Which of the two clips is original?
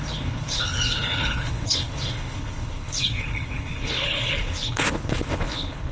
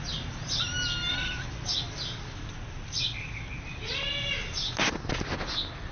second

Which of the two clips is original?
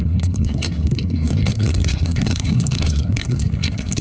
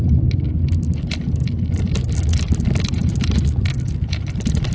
second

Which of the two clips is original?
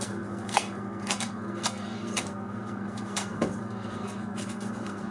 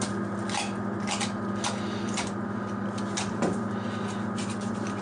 second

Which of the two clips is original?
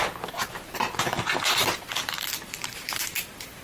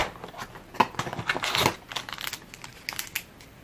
second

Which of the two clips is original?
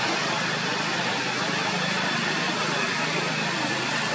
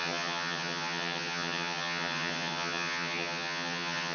first